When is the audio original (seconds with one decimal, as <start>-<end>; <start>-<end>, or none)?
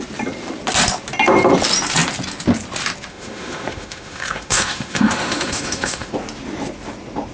0.0-3.1; 6.1-7.3